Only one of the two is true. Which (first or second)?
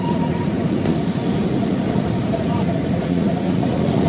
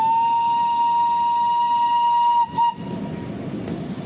second